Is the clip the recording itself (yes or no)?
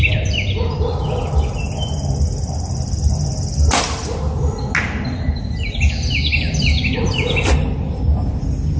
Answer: yes